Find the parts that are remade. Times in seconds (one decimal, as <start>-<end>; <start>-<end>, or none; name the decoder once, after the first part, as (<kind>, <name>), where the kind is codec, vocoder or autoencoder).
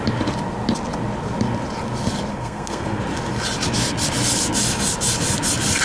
2.3-3.0 (codec, SNAC)